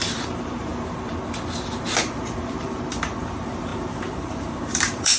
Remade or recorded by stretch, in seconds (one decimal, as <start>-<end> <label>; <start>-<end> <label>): 0.0-0.7 remade; 0.7-2.5 recorded; 2.5-5.2 remade